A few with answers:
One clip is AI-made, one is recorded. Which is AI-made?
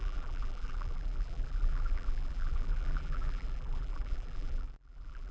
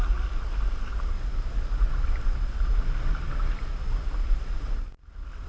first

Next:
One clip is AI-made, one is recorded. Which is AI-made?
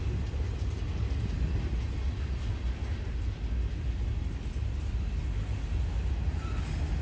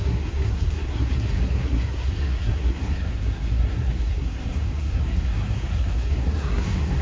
second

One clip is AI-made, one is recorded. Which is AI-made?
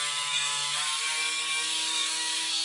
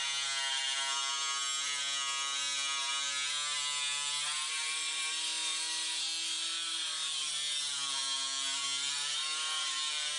first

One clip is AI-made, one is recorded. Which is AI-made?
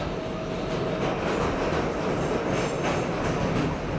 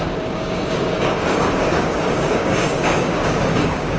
second